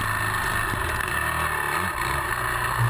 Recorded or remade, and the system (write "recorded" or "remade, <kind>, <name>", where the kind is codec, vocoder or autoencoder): recorded